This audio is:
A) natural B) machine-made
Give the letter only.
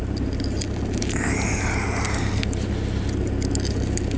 A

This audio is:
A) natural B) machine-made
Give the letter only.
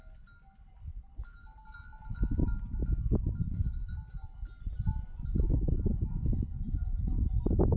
A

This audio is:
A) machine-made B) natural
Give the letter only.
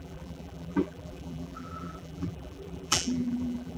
A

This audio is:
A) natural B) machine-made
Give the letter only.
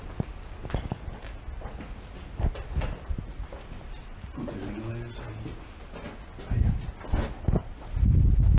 A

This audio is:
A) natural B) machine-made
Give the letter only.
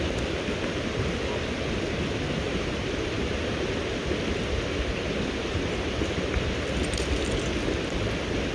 A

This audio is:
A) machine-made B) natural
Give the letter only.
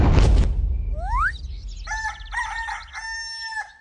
B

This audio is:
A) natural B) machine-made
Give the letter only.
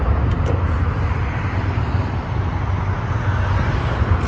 A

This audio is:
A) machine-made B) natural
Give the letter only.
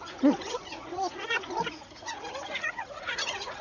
A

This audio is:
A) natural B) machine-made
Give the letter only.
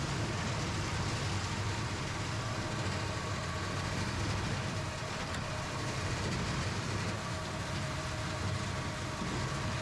B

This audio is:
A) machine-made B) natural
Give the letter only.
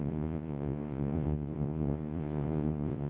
A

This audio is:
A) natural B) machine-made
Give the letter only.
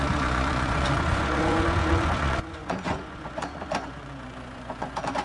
B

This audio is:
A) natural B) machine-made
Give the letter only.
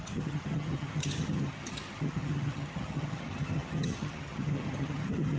B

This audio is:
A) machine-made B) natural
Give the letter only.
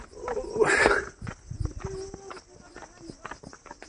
B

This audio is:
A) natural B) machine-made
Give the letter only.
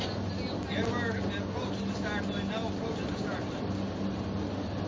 A